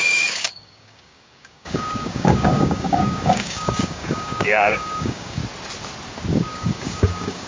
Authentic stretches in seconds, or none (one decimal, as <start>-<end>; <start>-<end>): 5.4-6.3

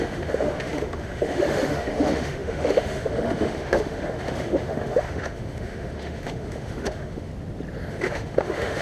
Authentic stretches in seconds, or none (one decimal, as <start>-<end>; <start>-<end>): 7.3-7.9

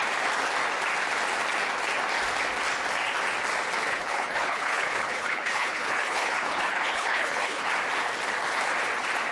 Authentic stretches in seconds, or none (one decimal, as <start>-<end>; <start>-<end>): 0.0-3.9; 7.7-9.3

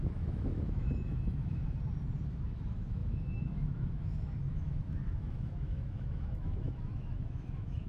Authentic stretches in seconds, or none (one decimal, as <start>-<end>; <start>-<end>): 1.6-2.3

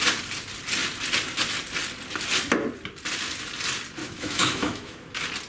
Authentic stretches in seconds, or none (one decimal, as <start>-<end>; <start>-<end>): 0.0-4.0; 5.1-5.5

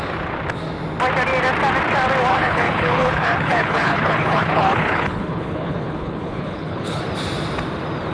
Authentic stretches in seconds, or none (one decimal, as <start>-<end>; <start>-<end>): 0.0-2.3; 7.0-8.1

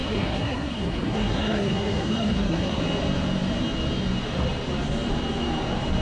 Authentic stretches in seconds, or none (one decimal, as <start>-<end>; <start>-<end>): 2.8-6.0

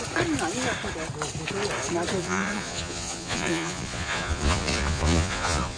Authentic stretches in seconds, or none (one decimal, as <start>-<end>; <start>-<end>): 0.0-2.2